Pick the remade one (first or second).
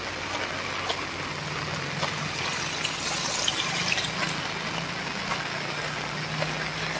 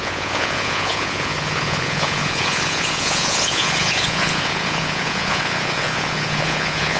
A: second